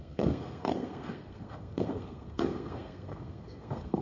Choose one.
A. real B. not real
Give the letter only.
B